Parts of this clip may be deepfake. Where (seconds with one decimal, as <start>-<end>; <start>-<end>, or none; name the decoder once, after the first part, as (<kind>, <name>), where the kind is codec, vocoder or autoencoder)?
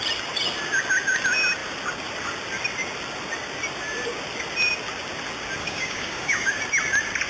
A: 5.6-6.5 (codec, DAC)